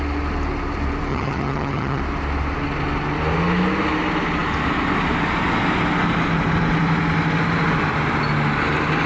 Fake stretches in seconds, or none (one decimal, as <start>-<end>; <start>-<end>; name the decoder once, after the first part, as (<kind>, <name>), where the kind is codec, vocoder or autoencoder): 1.1-2.0 (vocoder, HiFi-GAN)